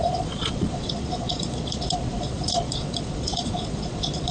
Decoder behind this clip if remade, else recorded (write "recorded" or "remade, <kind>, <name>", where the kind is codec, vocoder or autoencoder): remade, vocoder, Vocos